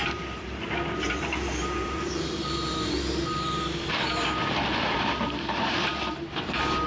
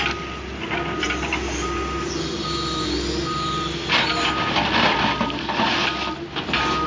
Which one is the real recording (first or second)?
second